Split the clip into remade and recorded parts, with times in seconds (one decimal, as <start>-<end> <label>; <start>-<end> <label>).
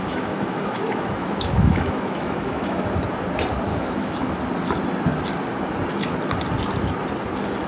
0.0-2.8 remade; 2.8-3.7 recorded; 3.7-4.3 remade; 4.3-7.7 recorded